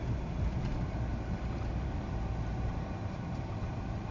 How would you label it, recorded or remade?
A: remade